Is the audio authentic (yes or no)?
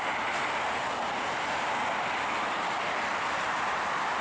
yes